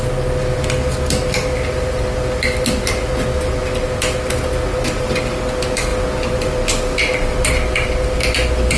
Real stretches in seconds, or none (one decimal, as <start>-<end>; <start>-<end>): 0.0-8.8